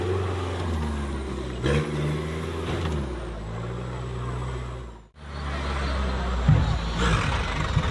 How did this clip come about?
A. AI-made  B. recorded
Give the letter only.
B